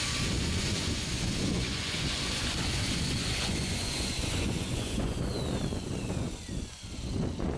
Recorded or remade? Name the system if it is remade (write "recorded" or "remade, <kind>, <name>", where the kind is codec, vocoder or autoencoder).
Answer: remade, vocoder, Vocos